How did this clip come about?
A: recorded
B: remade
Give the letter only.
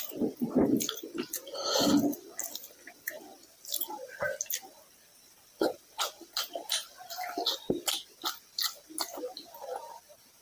A